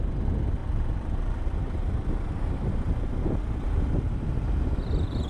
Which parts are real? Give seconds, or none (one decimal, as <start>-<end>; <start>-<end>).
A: 0.0-0.6; 2.1-5.3